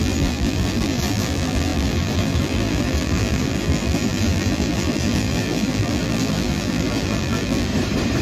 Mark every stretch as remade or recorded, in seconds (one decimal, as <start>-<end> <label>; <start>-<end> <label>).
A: 0.0-7.7 remade; 7.7-8.2 recorded